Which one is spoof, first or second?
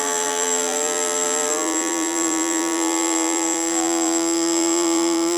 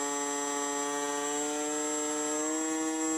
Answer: first